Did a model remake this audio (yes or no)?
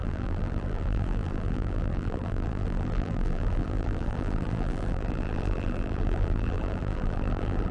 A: yes